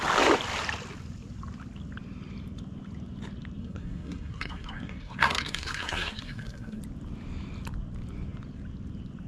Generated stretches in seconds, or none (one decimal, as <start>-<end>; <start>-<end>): 3.6-6.8